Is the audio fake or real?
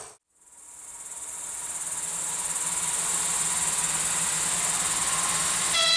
real